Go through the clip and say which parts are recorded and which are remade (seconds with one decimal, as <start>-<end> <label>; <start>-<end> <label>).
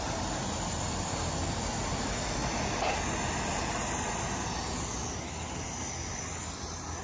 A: 0.0-2.4 recorded; 2.4-3.0 remade; 3.0-7.0 recorded